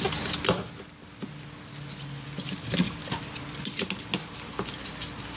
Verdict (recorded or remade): recorded